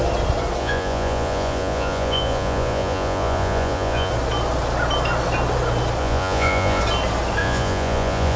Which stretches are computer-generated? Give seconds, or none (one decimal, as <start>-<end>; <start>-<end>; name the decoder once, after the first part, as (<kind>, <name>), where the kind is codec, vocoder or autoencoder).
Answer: 0.6-4.1 (vocoder, Vocos); 6.0-6.8; 7.4-8.4